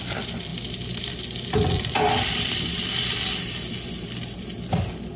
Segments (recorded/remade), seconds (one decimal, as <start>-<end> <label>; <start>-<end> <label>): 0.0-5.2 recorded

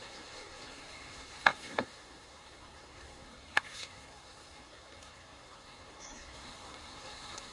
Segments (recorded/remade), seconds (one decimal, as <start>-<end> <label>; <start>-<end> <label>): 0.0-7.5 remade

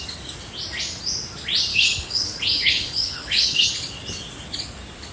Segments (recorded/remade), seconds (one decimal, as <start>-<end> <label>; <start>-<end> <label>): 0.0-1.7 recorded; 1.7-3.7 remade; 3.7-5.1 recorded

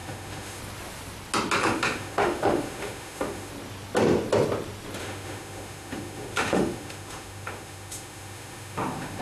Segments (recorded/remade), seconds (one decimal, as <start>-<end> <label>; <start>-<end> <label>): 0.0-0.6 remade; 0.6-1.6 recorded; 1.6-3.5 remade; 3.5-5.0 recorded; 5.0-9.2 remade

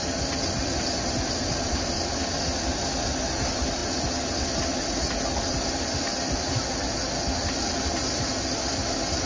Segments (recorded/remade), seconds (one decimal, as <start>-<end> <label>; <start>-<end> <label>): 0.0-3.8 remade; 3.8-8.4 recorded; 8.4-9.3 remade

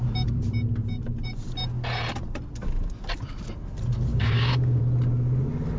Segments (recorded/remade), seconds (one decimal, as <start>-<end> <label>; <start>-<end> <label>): 0.0-4.1 recorded; 4.1-4.8 remade; 4.8-5.8 recorded